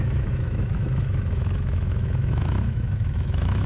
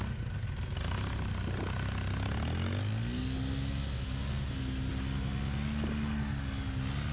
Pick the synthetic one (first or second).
first